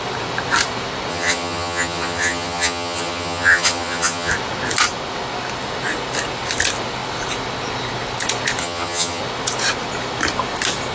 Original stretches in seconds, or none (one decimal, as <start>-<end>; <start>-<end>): 0.0-1.1; 4.3-8.6; 9.2-10.9